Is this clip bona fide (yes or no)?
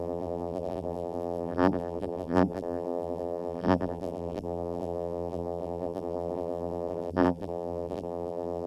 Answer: no